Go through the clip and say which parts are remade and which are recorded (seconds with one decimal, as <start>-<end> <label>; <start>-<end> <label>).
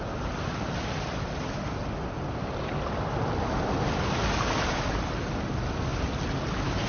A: 0.0-6.9 recorded